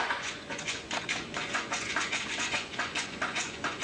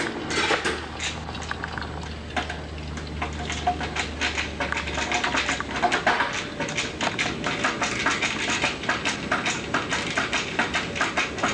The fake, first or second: first